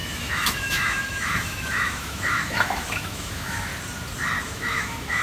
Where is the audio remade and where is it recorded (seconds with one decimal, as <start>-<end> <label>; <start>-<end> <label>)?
0.0-3.7 remade; 3.7-4.4 recorded; 4.4-5.2 remade

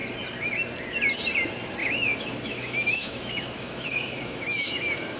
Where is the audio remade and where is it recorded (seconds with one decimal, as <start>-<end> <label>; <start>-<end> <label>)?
0.0-1.8 recorded; 1.8-5.2 remade

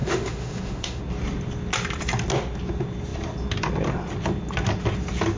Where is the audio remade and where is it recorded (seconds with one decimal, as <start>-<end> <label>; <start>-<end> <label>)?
0.0-1.0 remade; 1.0-5.4 recorded

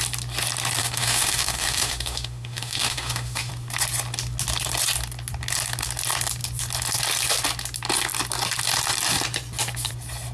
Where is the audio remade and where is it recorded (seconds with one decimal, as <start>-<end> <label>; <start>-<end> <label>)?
0.0-0.8 recorded; 0.8-3.5 remade; 3.5-10.3 recorded

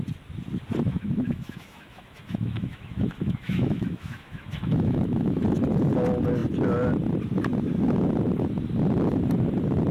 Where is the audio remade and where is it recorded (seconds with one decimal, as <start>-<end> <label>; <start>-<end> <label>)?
0.0-0.9 recorded; 0.9-5.4 remade; 5.4-9.9 recorded

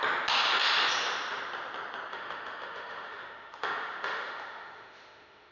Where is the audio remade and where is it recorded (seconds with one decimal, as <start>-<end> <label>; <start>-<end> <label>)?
0.0-2.1 recorded; 2.1-5.5 remade

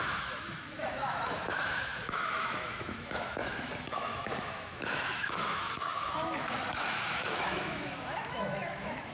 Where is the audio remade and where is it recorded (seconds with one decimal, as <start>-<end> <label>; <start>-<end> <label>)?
0.0-9.1 remade

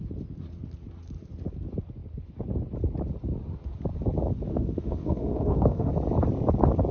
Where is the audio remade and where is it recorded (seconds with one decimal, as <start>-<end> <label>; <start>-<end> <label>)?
0.0-4.5 recorded; 4.5-5.9 remade; 5.9-6.9 recorded